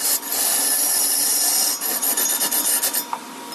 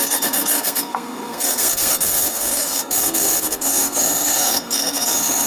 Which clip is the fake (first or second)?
second